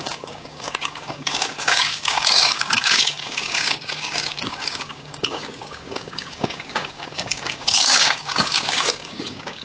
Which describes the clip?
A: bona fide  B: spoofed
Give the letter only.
B